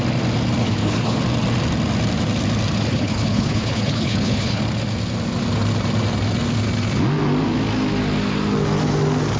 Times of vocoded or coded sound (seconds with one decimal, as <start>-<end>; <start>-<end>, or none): 0.6-1.2; 2.9-4.6